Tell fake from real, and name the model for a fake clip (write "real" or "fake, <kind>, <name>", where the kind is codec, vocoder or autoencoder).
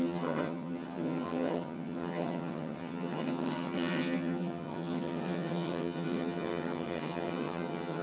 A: fake, vocoder, HiFi-GAN